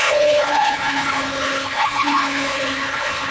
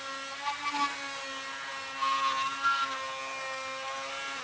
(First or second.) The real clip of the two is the second